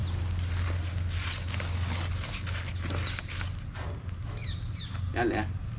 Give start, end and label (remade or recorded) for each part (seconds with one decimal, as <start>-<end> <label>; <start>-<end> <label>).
0.0-5.8 recorded